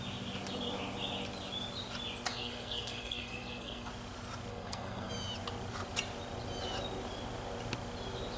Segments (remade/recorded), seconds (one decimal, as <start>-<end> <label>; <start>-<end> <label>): 0.0-2.3 recorded; 2.3-3.9 remade; 3.9-4.5 recorded; 4.5-5.1 remade; 5.1-8.4 recorded